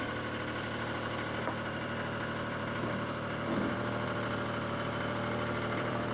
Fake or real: fake